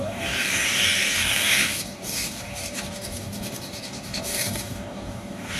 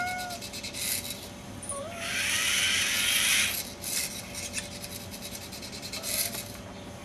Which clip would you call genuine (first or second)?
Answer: second